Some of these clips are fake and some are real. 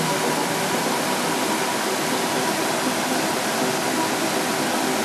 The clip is real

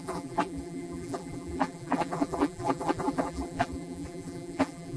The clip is fake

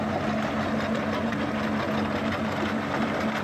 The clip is real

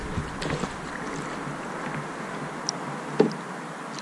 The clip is real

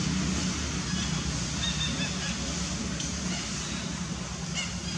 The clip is real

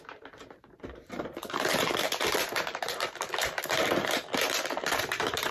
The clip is fake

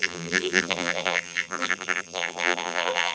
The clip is fake